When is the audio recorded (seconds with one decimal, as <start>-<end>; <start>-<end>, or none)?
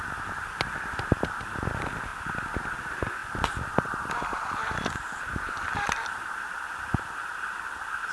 0.0-2.1; 2.7-3.2; 7.0-8.1